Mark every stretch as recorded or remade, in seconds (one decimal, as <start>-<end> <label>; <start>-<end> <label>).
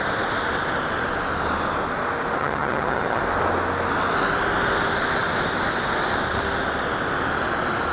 0.0-2.4 recorded; 2.4-3.2 remade; 3.2-7.9 recorded